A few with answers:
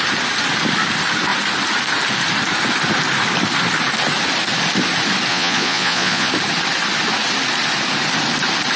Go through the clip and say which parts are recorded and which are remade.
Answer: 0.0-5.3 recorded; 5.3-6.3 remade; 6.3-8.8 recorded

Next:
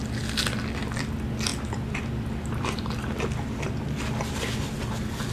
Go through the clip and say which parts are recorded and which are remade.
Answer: 0.0-1.5 recorded; 1.5-4.7 remade; 4.7-5.3 recorded

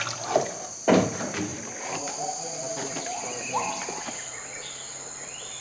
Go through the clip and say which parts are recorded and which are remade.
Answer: 0.0-5.6 recorded

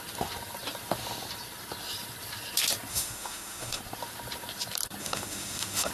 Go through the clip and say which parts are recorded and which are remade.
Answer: 0.0-2.9 recorded; 2.9-3.8 remade; 3.8-5.0 recorded; 5.0-5.9 remade

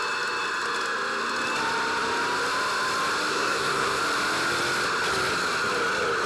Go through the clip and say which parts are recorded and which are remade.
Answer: 0.0-3.3 recorded; 3.3-4.0 remade; 4.0-6.3 recorded

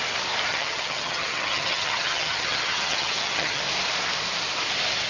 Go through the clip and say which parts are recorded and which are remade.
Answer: 0.0-0.5 recorded; 0.5-3.6 remade; 3.6-5.1 recorded